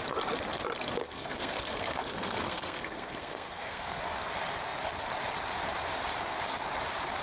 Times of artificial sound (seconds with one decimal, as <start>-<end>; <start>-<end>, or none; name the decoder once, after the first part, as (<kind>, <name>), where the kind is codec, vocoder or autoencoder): 1.0-4.0 (codec, SNAC)